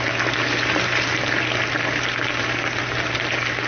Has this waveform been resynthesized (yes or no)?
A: yes